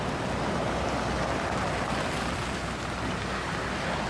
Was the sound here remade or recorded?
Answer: recorded